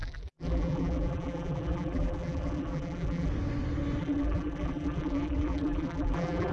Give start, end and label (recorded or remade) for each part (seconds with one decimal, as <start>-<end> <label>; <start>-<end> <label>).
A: 0.0-3.3 remade; 3.3-4.0 recorded; 4.0-6.5 remade